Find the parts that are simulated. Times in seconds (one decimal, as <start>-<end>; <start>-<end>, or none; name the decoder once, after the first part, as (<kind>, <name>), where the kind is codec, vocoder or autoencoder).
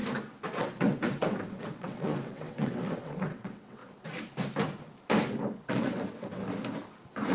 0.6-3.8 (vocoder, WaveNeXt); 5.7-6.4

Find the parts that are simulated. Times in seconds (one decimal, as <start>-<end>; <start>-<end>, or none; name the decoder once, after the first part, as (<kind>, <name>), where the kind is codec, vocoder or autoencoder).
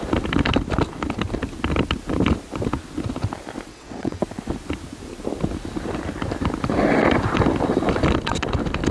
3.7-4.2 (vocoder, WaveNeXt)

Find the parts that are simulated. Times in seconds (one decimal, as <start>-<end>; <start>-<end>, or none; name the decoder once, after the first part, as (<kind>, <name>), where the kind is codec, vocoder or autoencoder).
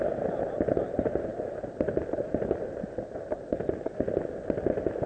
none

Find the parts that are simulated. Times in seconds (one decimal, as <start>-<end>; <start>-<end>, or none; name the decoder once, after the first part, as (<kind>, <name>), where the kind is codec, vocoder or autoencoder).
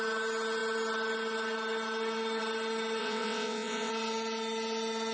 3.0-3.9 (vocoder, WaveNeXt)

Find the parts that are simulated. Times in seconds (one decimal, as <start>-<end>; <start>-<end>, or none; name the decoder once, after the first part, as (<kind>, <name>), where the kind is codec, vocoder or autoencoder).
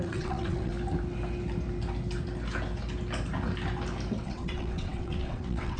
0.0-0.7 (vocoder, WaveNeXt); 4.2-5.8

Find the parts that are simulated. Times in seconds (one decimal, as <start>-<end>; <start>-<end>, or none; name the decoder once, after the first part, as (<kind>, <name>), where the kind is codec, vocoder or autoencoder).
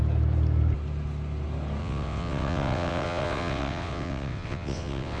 1.8-5.2 (vocoder, WaveNeXt)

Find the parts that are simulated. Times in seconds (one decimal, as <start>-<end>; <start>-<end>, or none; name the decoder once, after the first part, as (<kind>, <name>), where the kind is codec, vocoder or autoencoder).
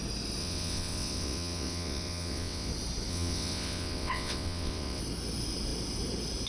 0.4-2.7 (vocoder, WaveNeXt); 3.1-5.0